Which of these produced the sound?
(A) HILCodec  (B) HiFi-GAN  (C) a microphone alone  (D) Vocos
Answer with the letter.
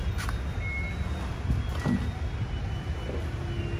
C